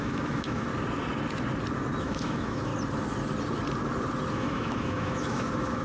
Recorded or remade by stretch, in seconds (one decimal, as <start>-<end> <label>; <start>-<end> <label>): 0.0-0.7 remade; 0.7-2.0 recorded; 2.0-2.7 remade; 2.7-4.3 recorded; 4.3-5.8 remade